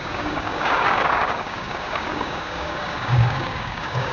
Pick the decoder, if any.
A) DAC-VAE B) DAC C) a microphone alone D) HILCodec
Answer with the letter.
B